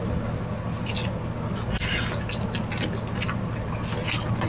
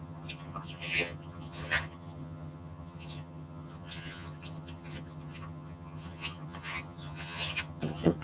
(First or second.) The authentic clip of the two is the first